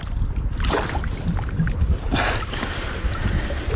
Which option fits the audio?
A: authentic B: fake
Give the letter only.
A